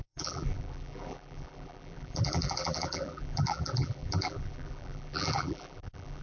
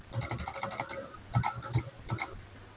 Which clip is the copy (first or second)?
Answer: first